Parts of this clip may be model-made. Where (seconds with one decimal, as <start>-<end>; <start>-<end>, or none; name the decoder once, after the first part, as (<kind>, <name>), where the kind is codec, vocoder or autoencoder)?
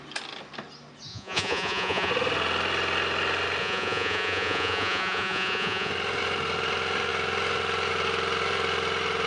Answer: 1.1-2.1 (vocoder, Vocos); 3.6-5.9